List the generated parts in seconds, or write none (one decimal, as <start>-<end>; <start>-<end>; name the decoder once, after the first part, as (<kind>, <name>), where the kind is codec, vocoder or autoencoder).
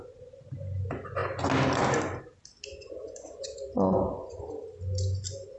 2.7-4.4 (vocoder, Vocos)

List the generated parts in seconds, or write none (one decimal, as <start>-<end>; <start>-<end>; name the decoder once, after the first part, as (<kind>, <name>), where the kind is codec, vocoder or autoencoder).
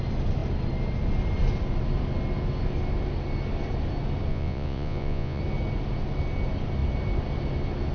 4.3-5.4 (vocoder, Vocos)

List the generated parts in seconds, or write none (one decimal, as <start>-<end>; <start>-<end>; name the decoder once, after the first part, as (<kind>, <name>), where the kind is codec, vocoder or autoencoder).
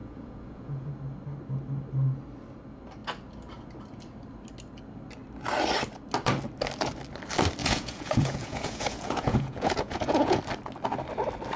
0.0-0.9 (vocoder, Vocos); 7.6-10.4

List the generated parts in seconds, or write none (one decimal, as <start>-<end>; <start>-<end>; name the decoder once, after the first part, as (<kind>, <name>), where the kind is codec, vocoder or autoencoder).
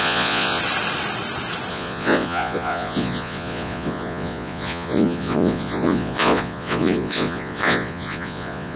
0.0-0.6 (vocoder, Vocos); 1.7-8.8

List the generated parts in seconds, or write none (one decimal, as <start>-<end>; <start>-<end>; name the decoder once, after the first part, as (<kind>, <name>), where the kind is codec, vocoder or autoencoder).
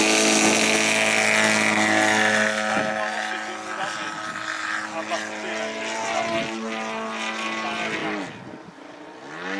none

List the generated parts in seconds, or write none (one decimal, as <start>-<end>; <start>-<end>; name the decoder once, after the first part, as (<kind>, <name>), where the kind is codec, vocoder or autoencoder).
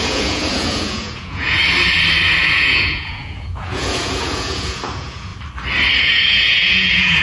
0.0-1.6 (vocoder, Vocos); 2.4-5.3; 6.0-7.2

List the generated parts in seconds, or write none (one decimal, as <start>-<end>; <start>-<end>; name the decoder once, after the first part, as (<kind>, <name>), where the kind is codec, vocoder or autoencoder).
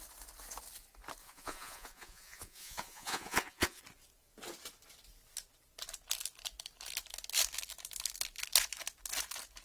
1.2-3.8 (vocoder, Vocos)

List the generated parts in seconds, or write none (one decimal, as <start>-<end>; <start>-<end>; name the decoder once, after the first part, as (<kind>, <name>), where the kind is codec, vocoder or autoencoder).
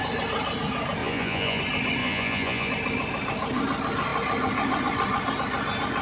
1.0-1.6 (vocoder, Vocos); 2.0-2.7